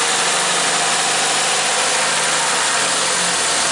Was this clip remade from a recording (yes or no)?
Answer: no